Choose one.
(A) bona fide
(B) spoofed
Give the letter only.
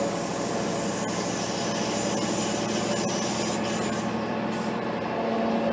A